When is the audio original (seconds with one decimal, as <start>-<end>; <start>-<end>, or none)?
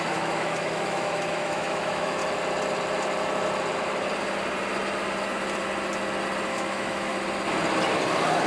2.2-6.5; 7.1-8.5